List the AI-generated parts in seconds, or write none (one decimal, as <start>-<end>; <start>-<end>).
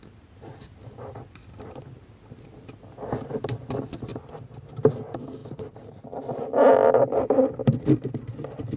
4.1-4.9